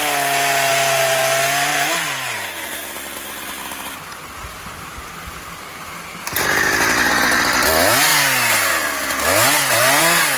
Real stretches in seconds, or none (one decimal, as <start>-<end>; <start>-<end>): 0.0-1.7; 5.1-10.4